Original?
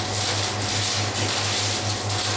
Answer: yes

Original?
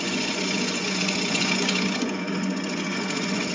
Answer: no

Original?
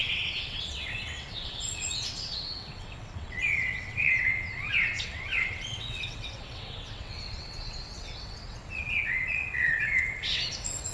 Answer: no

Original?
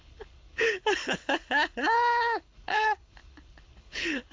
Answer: no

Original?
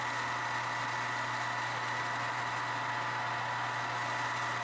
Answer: yes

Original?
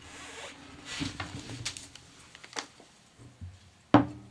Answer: yes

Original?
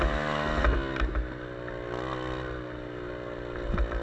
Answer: yes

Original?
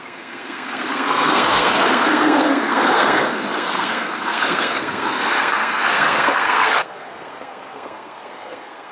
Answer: no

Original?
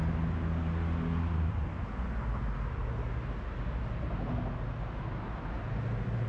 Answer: yes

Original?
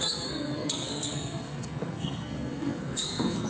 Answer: no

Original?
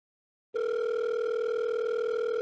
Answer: yes